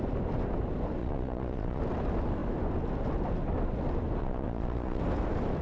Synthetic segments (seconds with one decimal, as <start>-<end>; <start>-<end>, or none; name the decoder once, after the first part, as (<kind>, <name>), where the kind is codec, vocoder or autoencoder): 1.0-1.8 (vocoder, Vocos); 4.2-5.0